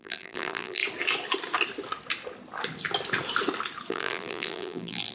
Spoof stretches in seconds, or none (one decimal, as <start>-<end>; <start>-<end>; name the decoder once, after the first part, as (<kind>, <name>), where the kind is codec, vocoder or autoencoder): 0.0-0.8 (vocoder, BigVGAN v2); 3.9-5.1